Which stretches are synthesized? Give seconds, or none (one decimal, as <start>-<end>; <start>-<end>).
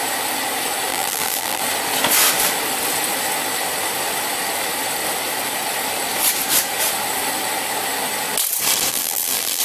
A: 0.9-1.6; 8.9-9.6